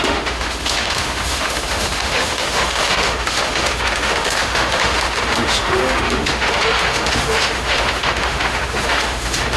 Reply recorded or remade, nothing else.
remade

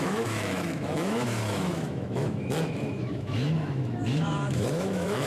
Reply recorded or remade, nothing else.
remade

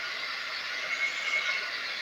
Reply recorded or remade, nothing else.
recorded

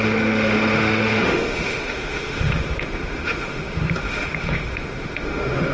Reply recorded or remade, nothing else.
remade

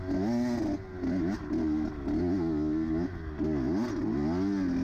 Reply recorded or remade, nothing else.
recorded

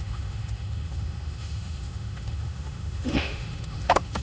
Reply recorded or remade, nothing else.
remade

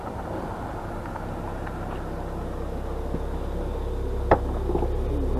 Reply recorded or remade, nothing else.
recorded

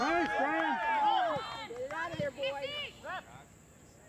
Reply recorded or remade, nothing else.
recorded